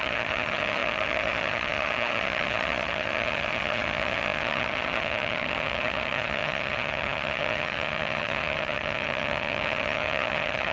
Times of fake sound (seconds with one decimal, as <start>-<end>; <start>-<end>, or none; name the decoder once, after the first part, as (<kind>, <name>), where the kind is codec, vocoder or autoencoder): 0.0-10.7 (vocoder, HiFi-GAN)

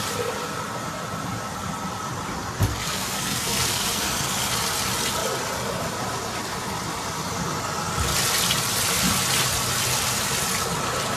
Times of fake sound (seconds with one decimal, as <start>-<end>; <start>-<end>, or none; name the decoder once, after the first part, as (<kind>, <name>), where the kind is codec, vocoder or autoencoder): 2.7-4.4 (codec, SNAC)

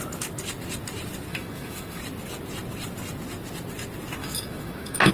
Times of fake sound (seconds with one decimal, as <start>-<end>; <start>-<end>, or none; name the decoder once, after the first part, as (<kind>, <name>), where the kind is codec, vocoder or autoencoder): 1.3-2.0 (autoencoder, DAC-VAE); 4.2-5.1

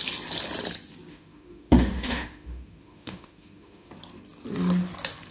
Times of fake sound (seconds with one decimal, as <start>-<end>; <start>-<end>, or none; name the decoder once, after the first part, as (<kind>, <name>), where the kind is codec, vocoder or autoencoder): 1.1-3.9 (autoencoder, DAC-VAE)

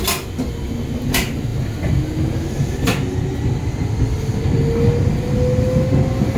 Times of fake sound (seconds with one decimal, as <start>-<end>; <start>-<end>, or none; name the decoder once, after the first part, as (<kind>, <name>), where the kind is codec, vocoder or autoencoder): none

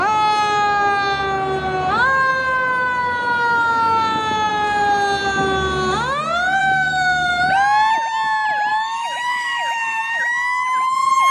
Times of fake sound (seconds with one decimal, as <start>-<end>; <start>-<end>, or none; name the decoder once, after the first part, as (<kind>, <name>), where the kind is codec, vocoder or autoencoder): 6.6-7.3 (autoencoder, DAC-VAE); 8.7-10.2